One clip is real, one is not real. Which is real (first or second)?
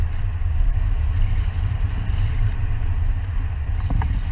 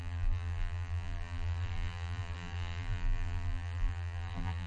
first